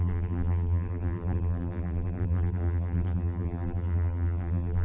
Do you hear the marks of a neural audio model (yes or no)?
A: yes